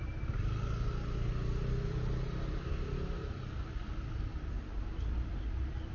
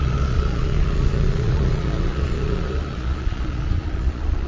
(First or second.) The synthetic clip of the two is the second